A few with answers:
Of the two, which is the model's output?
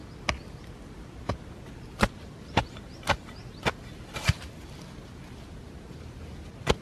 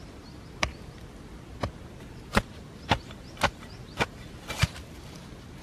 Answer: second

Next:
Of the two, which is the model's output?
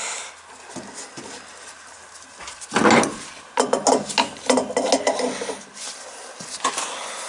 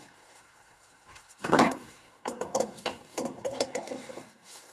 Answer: second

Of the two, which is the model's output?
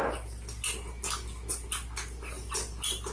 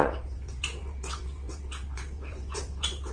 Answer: second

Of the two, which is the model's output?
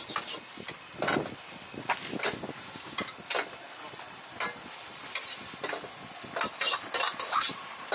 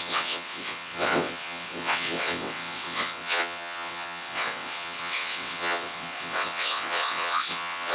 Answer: second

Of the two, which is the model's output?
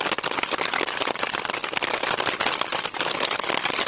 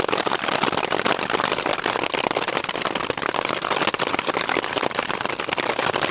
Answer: second